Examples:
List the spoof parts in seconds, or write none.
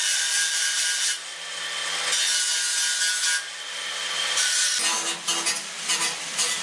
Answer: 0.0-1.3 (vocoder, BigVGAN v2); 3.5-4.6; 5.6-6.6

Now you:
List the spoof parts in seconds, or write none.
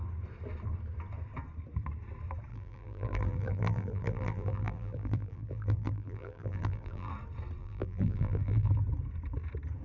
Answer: 2.5-7.1 (vocoder, BigVGAN v2); 7.6-8.7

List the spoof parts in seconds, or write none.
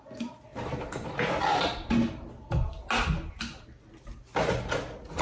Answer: none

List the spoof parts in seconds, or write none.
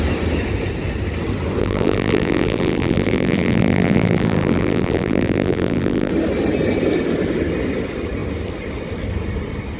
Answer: 1.6-6.1 (vocoder, BigVGAN v2)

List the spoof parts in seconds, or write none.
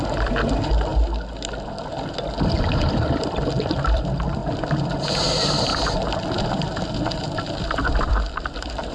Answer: 0.0-0.9 (vocoder, BigVGAN v2); 2.8-5.7; 6.5-8.9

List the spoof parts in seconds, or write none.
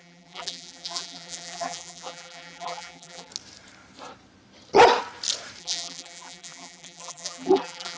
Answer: 0.0-3.3 (vocoder, BigVGAN v2); 5.6-8.0